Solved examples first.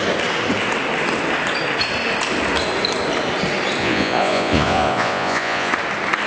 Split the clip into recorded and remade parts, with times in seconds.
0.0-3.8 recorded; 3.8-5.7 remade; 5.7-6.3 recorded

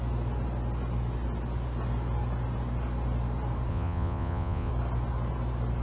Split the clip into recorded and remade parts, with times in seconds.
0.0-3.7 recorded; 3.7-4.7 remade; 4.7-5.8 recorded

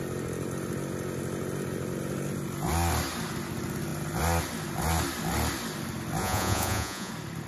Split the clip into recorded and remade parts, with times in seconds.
0.0-6.2 recorded; 6.2-7.1 remade; 7.1-7.5 recorded

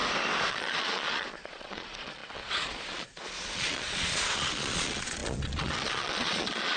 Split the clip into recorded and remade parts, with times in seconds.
0.0-0.5 recorded; 0.5-6.8 remade

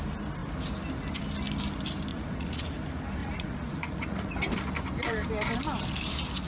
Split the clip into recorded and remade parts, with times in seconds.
0.0-2.1 recorded; 2.1-2.8 remade; 2.8-3.2 recorded; 3.2-4.3 remade; 4.3-6.5 recorded

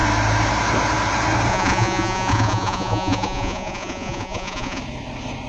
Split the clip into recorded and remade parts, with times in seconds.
0.0-1.5 recorded; 1.5-4.8 remade; 4.8-5.5 recorded

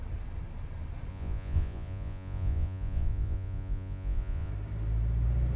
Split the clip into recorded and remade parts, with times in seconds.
0.0-1.1 recorded; 1.1-4.5 remade; 4.5-5.6 recorded